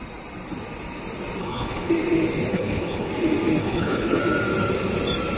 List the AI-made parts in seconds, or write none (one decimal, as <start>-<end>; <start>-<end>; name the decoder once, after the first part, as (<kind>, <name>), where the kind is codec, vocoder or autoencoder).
1.4-1.9 (codec, HILCodec); 2.5-3.1; 3.6-4.2